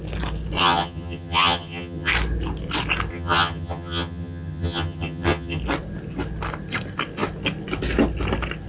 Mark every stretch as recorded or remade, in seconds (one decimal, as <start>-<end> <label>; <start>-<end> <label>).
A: 0.0-0.6 recorded; 0.6-2.1 remade; 2.1-3.1 recorded; 3.1-5.6 remade; 5.6-8.7 recorded